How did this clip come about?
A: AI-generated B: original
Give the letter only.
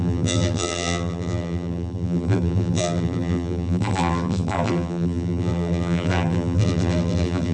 A